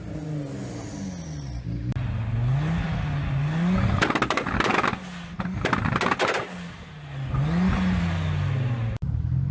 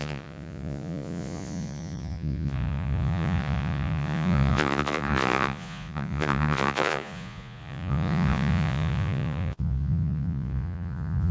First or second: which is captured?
first